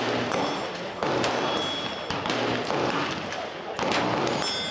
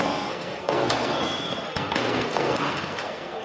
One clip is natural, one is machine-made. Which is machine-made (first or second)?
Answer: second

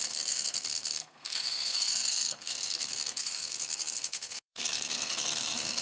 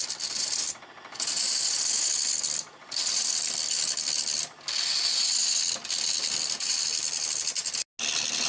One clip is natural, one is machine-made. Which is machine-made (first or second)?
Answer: first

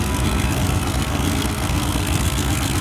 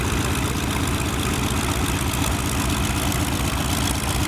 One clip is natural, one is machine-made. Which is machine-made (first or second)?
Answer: first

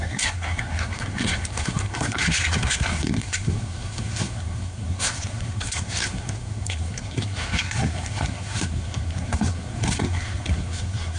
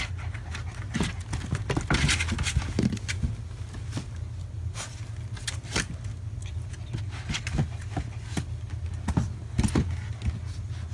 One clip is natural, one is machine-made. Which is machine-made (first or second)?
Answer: first